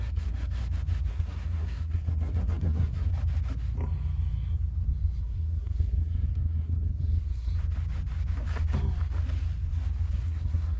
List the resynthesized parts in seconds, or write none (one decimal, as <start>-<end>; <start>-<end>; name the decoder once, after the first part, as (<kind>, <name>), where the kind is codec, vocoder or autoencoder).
0.0-0.6 (codec, SNAC); 1.1-3.1; 5.2-7.5; 10.1-10.8